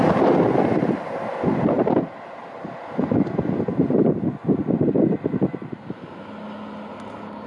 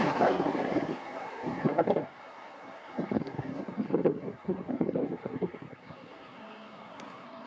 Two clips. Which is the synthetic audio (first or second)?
second